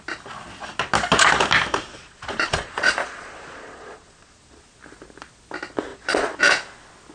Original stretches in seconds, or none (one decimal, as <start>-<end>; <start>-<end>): 0.0-1.9; 4.6-5.9; 6.4-7.1